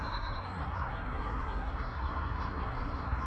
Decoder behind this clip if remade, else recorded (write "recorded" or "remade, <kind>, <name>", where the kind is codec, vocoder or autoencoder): remade, codec, SNAC